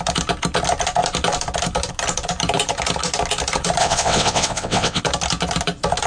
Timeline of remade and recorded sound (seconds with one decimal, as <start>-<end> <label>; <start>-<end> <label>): 0.0-3.8 recorded; 3.8-5.0 remade; 5.0-6.1 recorded